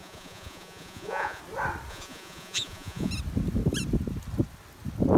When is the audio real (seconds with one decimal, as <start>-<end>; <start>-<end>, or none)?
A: 1.4-1.9; 3.1-5.2